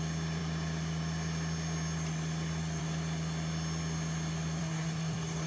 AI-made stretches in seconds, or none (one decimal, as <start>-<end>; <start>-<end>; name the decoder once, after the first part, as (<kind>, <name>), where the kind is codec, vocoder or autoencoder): 4.6-5.5 (codec, SNAC)